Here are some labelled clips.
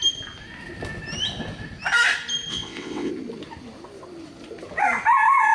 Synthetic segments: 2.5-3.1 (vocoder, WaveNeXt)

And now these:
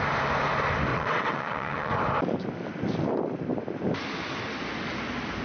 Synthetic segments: 0.9-1.9 (vocoder, WaveNeXt)

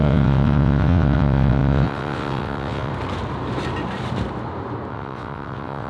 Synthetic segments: 0.0-2.9 (vocoder, WaveNeXt); 4.9-5.9

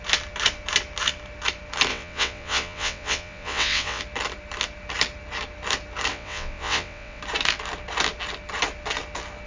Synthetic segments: 1.9-4.0 (vocoder, WaveNeXt); 6.1-7.2